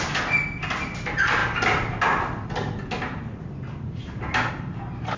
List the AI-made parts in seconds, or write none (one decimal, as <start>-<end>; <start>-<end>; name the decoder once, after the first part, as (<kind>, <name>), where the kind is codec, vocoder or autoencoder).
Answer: none

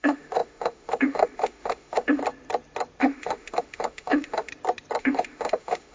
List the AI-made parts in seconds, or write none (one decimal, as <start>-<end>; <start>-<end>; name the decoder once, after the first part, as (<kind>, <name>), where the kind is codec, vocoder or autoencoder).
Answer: 0.0-2.2 (autoencoder, DAC-VAE); 3.0-4.5; 5.0-5.9